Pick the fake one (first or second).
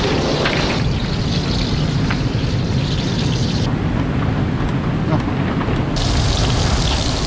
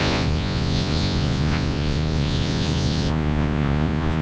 second